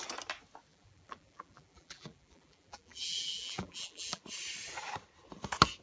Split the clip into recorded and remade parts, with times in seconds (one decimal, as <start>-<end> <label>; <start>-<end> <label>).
0.0-0.7 recorded; 0.7-4.2 remade; 4.2-5.8 recorded